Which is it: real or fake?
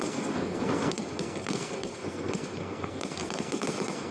fake